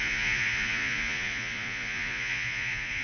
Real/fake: fake